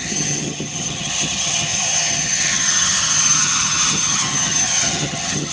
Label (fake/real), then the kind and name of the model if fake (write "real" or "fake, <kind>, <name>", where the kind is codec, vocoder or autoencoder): fake, vocoder, HiFi-GAN